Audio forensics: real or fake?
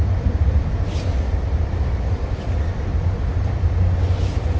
real